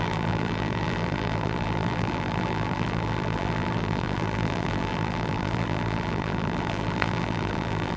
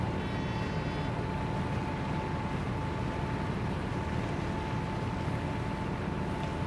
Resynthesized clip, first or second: first